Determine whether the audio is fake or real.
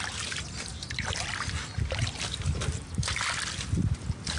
real